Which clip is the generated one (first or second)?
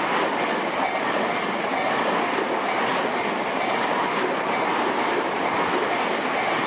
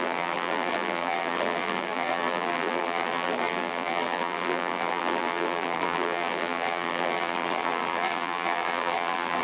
second